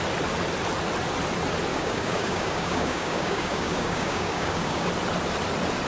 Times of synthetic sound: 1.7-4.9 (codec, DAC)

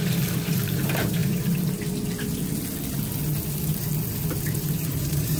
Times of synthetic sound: 0.0-1.2 (vocoder, BigVGAN v2); 4.4-5.4

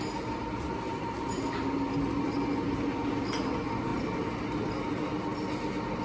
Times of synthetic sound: none

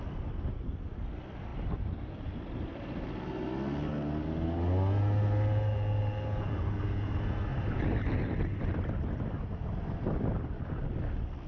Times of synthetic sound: 1.5-2.5 (vocoder, BigVGAN v2); 7.5-11.0

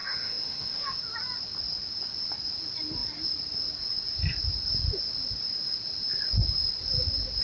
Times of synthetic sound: 0.0-1.0 (autoencoder, DAC-VAE)

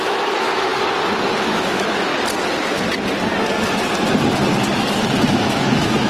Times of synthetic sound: 0.0-0.7 (autoencoder, DAC-VAE); 1.4-2.1; 5.3-6.1

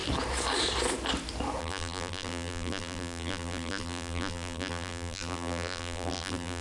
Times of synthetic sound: 1.6-6.6 (vocoder, BigVGAN v2)

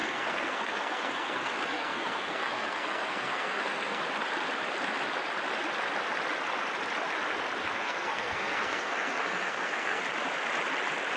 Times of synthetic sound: 0.0-4.0 (codec, SNAC); 7.6-10.0